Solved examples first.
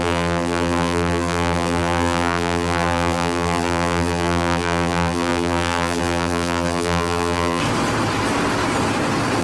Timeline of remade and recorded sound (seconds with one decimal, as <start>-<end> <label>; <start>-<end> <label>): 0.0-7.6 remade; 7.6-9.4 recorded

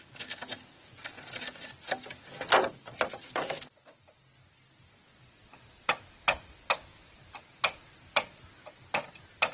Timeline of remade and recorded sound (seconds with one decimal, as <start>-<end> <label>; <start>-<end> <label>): 0.0-5.1 recorded; 5.1-5.9 remade; 5.9-9.5 recorded

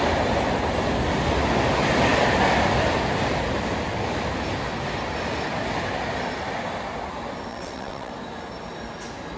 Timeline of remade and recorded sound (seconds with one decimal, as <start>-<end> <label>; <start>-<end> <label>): 0.0-7.5 recorded; 7.5-8.1 remade; 8.1-9.4 recorded